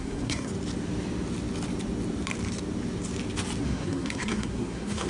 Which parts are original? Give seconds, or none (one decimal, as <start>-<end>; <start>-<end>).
0.5-3.6

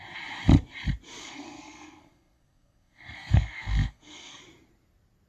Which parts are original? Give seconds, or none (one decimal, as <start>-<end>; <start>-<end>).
0.0-1.2; 4.4-5.3

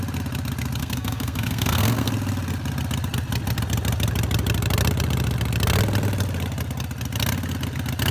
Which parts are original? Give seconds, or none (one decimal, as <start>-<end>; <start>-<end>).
0.0-0.8; 2.1-8.1

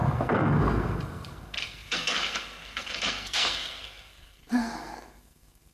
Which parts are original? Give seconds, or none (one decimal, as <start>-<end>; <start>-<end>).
none